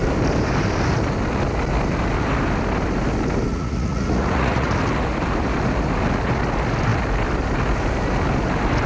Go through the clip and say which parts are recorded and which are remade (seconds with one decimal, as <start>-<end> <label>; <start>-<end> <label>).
0.0-3.5 recorded; 3.5-4.7 remade; 4.7-8.9 recorded